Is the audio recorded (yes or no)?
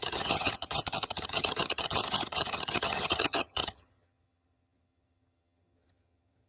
no